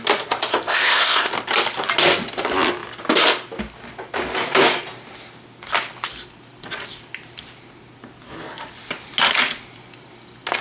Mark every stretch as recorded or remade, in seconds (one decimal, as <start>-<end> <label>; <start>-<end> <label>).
0.0-0.5 recorded; 0.5-1.3 remade; 1.3-10.6 recorded